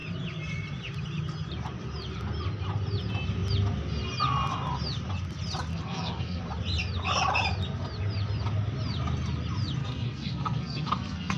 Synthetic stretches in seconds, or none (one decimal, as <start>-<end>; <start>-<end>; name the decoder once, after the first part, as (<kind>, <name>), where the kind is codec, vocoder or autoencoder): 5.7-6.4 (codec, SNAC); 9.8-11.4